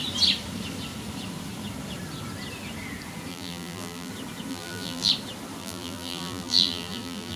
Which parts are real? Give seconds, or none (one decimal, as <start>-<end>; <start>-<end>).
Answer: 0.0-3.3; 4.1-4.5; 5.1-5.6